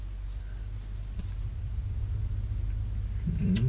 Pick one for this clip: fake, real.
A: real